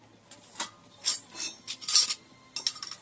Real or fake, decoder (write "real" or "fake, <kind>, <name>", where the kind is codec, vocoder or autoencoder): real